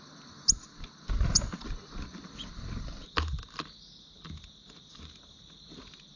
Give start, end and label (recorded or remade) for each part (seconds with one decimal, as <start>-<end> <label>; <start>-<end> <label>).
0.0-6.2 recorded